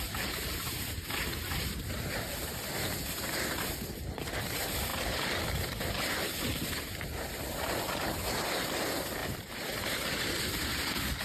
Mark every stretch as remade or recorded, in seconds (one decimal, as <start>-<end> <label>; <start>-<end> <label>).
0.0-4.9 recorded; 4.9-6.7 remade; 6.7-9.2 recorded; 9.2-11.2 remade